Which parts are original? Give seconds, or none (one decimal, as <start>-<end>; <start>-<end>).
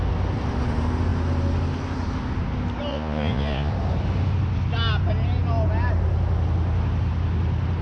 0.0-2.9; 3.7-7.8